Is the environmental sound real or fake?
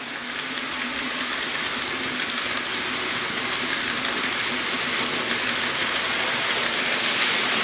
real